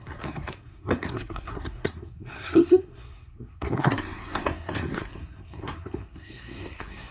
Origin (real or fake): fake